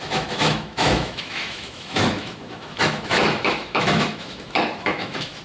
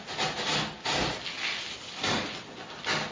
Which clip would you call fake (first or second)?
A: first